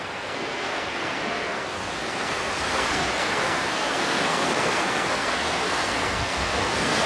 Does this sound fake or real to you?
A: fake